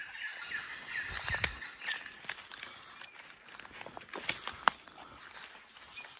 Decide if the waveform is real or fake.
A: real